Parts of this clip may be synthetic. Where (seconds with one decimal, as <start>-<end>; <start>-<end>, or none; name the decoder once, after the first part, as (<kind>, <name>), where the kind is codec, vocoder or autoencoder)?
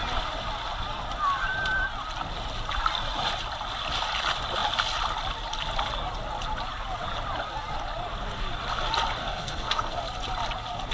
9.2-10.0 (codec, SNAC)